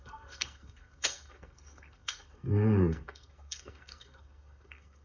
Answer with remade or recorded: remade